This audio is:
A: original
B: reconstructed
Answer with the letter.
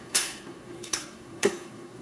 B